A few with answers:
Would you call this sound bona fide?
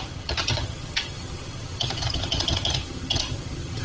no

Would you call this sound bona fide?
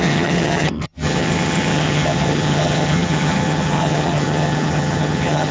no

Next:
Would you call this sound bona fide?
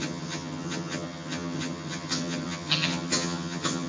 no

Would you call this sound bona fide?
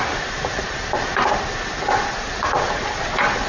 yes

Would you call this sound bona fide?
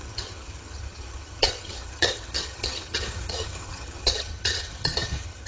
no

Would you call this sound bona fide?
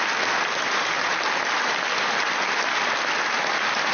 yes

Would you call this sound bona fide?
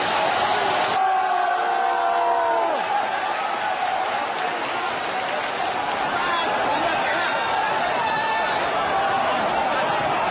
yes